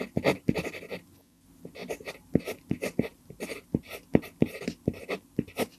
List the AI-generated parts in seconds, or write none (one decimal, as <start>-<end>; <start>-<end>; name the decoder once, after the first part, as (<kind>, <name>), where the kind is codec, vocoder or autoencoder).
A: 1.8-2.4 (vocoder, BigVGAN v2); 3.1-4.4